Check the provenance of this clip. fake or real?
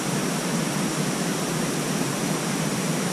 fake